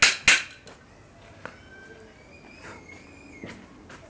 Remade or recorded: recorded